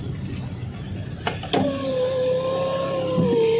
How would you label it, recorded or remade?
recorded